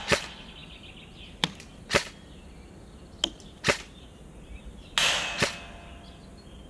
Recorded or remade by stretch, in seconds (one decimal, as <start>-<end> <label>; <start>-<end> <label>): 0.0-6.7 recorded